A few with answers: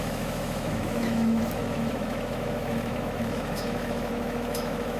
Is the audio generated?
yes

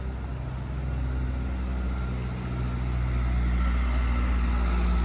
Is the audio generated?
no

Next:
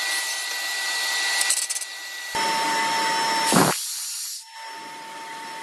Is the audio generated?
no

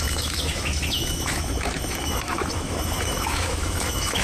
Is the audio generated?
yes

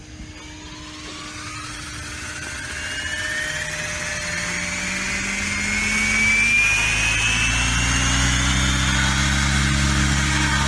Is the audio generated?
no